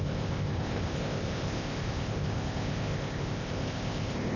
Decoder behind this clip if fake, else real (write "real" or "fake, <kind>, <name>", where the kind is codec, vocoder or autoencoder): fake, codec, ZipCodec